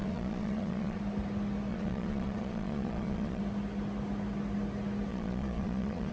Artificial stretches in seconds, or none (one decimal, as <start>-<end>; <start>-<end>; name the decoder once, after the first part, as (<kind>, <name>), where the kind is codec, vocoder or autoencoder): 0.0-1.0 (vocoder, Vocos); 1.7-3.4; 5.1-6.1